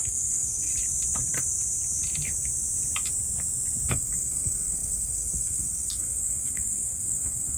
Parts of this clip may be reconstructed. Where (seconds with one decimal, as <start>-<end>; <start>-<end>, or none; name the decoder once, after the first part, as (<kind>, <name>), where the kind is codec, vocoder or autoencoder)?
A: 0.0-0.7 (codec, SNAC); 3.9-7.6